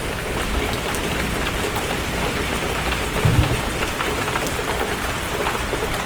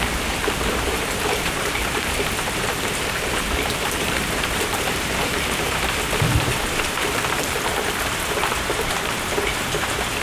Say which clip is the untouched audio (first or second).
first